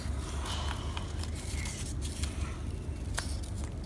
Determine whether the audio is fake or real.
real